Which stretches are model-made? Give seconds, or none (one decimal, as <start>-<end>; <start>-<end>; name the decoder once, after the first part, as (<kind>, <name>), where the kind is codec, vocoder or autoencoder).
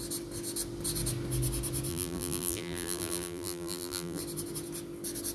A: 1.9-4.2 (vocoder, BigVGAN v2)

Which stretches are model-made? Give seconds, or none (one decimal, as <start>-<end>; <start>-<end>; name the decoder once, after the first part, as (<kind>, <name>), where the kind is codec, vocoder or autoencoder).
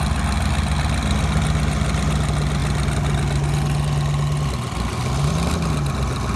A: none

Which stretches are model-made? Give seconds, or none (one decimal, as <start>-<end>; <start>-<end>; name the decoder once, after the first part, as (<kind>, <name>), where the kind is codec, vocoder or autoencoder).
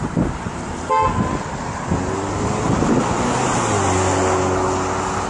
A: none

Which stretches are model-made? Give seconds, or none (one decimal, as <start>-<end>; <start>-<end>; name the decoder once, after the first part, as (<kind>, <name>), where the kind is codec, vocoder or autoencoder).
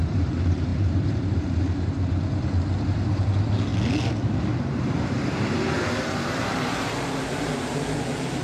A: 0.0-3.7 (vocoder, BigVGAN v2); 4.6-8.4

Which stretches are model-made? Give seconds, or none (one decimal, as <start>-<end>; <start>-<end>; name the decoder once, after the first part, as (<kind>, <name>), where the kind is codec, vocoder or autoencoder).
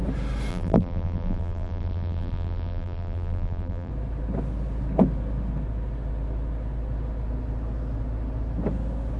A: 0.5-3.9 (vocoder, BigVGAN v2)